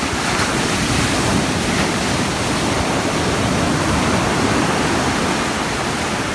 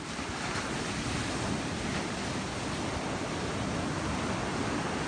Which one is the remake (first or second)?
first